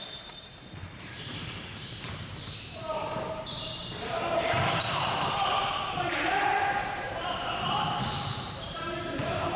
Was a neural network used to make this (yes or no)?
yes